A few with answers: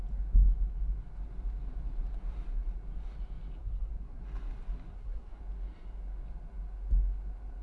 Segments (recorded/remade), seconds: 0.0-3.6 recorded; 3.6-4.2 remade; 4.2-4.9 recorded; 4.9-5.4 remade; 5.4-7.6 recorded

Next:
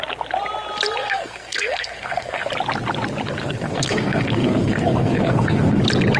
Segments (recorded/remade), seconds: 0.0-1.0 recorded; 1.0-2.5 remade; 2.5-3.4 recorded; 3.4-5.8 remade; 5.8-6.2 recorded

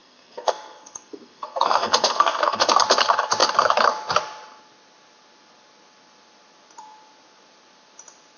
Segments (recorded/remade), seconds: 0.0-2.7 remade; 2.7-8.4 recorded

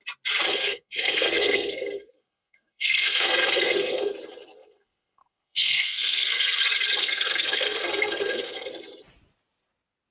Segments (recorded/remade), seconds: 0.0-0.5 recorded; 0.5-4.1 remade; 4.1-4.6 recorded; 4.6-6.6 remade; 6.6-7.0 recorded; 7.0-8.7 remade; 8.7-10.1 recorded

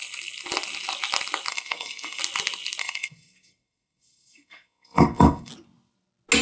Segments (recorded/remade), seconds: 0.0-1.5 recorded; 1.5-2.2 remade; 2.2-2.8 recorded; 2.8-5.5 remade; 5.5-6.4 recorded

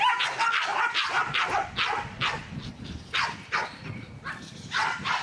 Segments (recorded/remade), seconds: 0.0-5.2 recorded

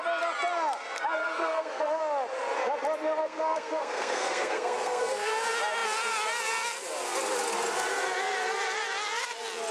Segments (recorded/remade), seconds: 0.0-1.2 recorded; 1.2-2.0 remade; 2.0-3.2 recorded; 3.2-5.3 remade; 5.3-9.7 recorded